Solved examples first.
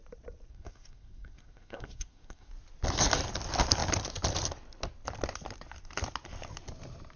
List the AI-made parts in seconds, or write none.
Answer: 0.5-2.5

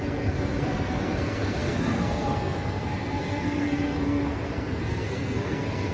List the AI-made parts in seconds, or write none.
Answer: 0.0-5.9

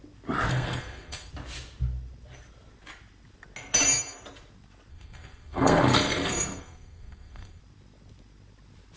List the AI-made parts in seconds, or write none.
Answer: 0.5-1.3; 4.9-7.6

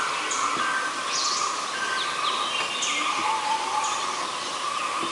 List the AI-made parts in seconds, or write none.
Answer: none

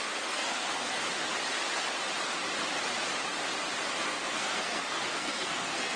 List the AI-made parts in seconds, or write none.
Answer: 0.0-1.0; 4.0-6.0

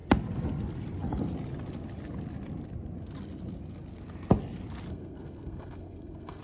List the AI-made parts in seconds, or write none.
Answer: 4.9-6.4

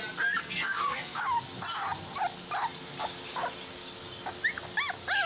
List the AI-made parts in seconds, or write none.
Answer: 0.4-1.2